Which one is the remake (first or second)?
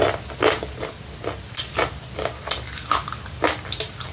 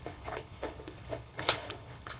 second